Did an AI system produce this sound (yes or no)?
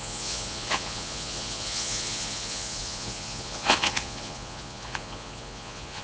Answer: yes